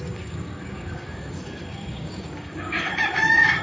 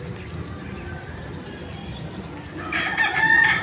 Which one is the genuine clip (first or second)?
second